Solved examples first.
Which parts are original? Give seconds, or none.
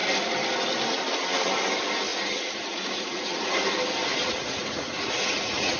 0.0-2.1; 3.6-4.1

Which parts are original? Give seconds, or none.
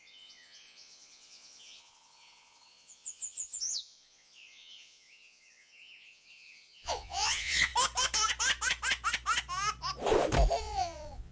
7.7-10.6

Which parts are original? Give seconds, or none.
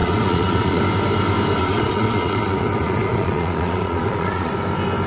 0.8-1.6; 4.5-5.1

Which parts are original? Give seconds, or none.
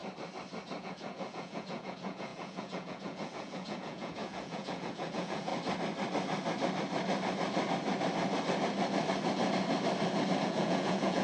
0.0-0.8; 5.5-10.4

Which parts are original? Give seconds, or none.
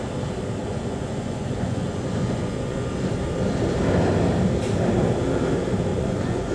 0.0-0.6; 2.9-5.9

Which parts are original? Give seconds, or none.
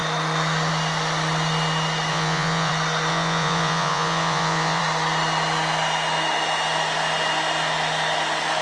0.0-2.1; 2.7-3.1; 4.8-8.6